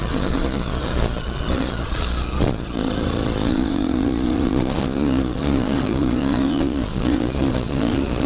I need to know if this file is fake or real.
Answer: fake